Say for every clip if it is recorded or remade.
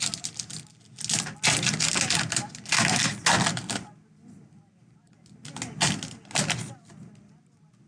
recorded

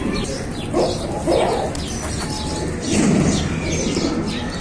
recorded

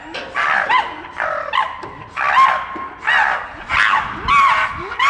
recorded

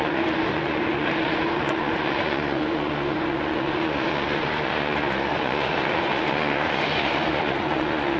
remade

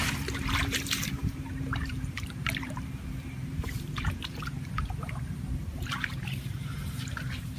remade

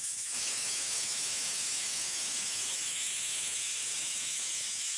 remade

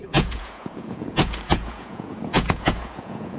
remade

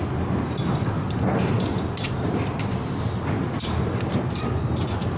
recorded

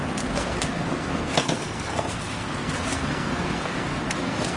remade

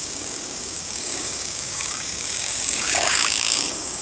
remade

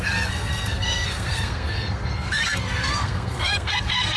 remade